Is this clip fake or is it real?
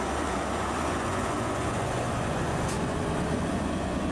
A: fake